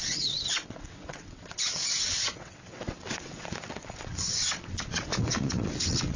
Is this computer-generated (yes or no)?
yes